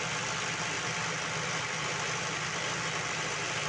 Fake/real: fake